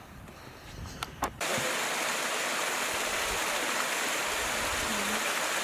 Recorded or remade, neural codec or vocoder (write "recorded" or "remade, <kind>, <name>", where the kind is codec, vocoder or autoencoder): recorded